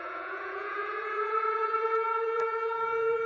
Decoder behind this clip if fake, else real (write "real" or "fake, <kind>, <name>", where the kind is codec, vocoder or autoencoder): fake, vocoder, Vocos